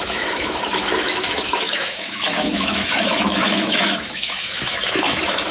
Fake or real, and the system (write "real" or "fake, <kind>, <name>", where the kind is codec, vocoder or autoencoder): fake, autoencoder, DAC-VAE